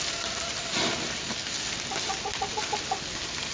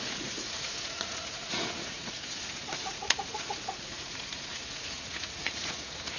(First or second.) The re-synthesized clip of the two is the second